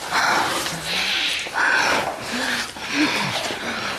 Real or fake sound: real